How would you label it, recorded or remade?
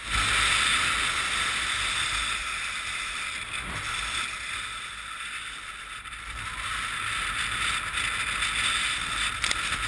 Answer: recorded